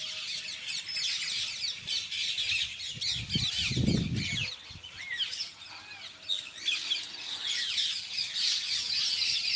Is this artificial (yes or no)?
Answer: no